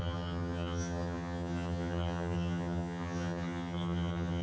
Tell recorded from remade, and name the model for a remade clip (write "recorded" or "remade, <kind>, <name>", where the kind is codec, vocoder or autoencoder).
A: remade, vocoder, HiFi-GAN